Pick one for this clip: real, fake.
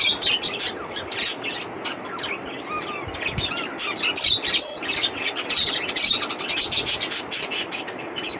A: real